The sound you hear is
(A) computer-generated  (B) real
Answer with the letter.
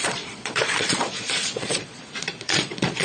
A